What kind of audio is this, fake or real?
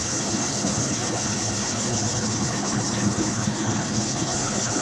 fake